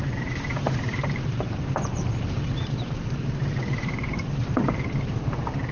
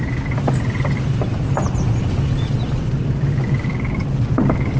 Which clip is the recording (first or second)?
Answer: second